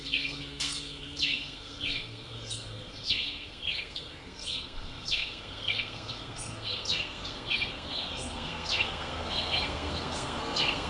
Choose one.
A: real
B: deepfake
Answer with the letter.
B